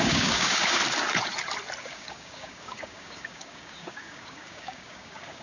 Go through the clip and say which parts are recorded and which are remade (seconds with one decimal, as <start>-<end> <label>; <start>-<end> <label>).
0.0-0.8 remade; 0.8-1.8 recorded; 1.8-5.4 remade